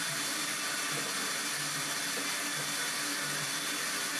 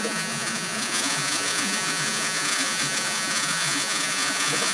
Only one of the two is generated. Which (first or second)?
second